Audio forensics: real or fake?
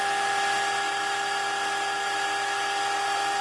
real